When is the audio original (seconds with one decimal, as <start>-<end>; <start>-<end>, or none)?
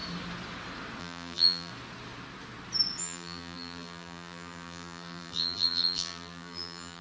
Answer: 0.0-1.0; 1.7-3.0